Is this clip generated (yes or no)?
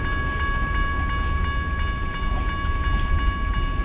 no